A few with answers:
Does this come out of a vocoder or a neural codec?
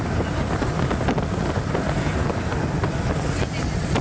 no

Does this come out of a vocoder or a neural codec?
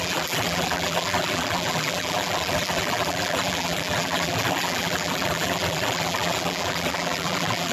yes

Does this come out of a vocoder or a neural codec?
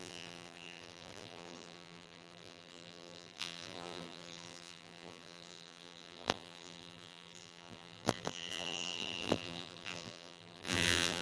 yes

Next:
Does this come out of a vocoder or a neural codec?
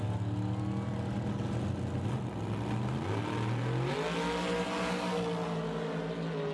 no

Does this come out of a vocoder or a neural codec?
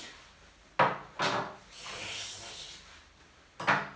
no